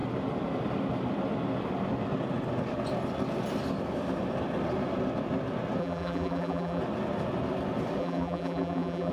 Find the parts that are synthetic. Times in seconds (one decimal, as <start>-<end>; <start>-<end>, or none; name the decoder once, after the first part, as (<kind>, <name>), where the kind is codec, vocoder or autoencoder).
5.8-6.8 (vocoder, BigVGAN v2); 8.0-9.1